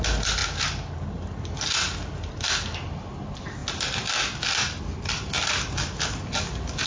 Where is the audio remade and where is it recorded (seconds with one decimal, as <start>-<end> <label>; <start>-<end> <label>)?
0.0-6.9 recorded